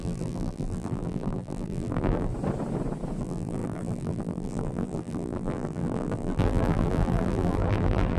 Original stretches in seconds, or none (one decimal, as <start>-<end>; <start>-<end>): 2.3-3.2